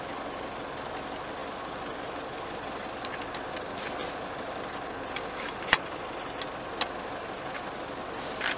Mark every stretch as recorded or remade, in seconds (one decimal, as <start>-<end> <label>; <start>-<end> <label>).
0.0-1.4 recorded; 1.4-5.8 remade; 5.8-8.6 recorded